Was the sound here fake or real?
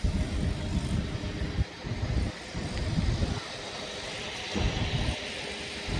real